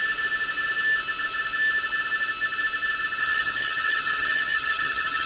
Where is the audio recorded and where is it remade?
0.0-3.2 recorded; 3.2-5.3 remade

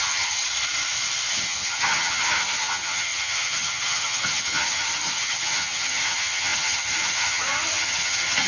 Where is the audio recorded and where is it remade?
0.0-0.4 remade; 0.4-1.3 recorded; 1.3-8.5 remade

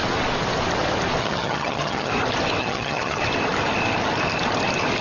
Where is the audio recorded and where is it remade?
0.0-1.2 recorded; 1.2-2.1 remade; 2.1-2.6 recorded; 2.6-3.2 remade; 3.2-5.0 recorded